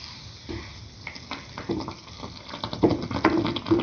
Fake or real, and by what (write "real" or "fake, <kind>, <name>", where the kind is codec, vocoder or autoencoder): real